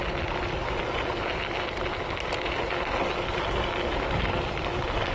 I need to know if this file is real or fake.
real